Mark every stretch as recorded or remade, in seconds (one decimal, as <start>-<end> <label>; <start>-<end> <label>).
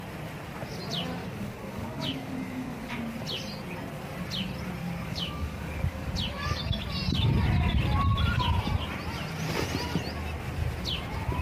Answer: 0.0-1.2 recorded; 1.2-3.0 remade; 3.0-4.8 recorded; 4.8-6.1 remade; 6.1-11.4 recorded